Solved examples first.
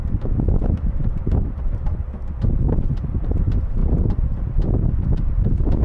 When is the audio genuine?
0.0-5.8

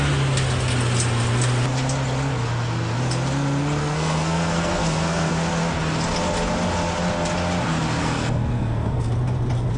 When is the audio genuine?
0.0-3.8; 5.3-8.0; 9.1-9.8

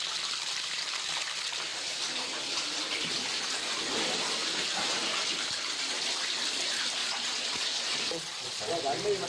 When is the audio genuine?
0.0-7.0; 8.7-9.3